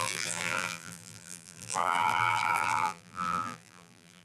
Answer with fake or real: fake